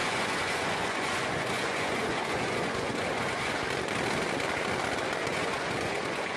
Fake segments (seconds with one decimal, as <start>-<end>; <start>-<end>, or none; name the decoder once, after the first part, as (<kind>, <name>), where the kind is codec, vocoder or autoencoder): 0.0-3.6 (vocoder, Vocos); 5.3-6.4